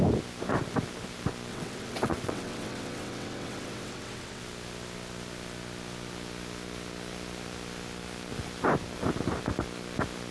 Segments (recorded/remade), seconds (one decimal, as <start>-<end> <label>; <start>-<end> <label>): 0.0-1.5 recorded; 1.5-4.4 remade; 4.4-10.3 recorded